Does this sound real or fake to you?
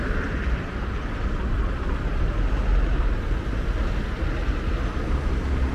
real